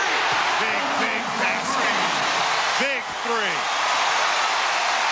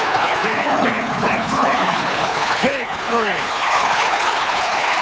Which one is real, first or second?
first